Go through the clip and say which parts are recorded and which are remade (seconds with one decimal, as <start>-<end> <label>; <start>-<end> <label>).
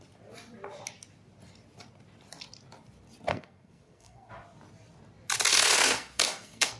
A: 0.0-3.3 recorded; 3.3-4.3 remade; 4.3-5.5 recorded; 5.5-6.8 remade